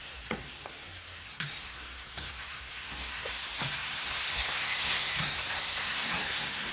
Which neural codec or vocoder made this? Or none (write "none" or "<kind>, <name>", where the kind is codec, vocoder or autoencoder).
codec, SNAC